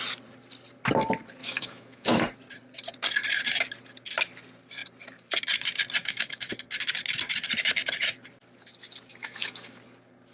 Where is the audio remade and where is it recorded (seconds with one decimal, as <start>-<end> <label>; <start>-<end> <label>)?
0.0-1.4 recorded; 1.4-2.2 remade; 2.2-6.0 recorded; 6.0-6.5 remade; 6.5-9.2 recorded; 9.2-9.8 remade; 9.8-10.3 recorded